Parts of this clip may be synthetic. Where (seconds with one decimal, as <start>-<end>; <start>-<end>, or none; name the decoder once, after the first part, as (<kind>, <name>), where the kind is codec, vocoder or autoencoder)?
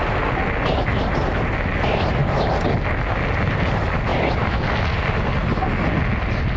none